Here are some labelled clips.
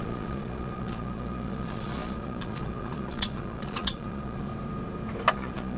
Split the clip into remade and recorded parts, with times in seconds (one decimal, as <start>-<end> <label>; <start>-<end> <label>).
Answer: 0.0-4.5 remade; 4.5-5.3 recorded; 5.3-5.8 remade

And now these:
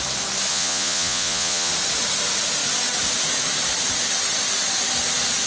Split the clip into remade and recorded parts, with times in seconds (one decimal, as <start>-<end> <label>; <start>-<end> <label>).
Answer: 0.0-0.5 recorded; 0.5-1.7 remade; 1.7-5.5 recorded

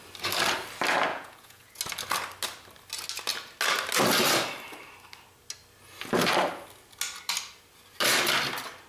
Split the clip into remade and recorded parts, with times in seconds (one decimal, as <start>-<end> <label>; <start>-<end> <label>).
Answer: 0.0-1.1 recorded; 1.1-1.8 remade; 1.8-8.9 recorded